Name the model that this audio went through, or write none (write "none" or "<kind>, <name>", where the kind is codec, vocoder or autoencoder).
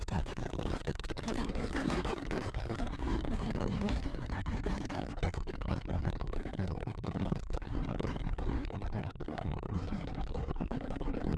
codec, SNAC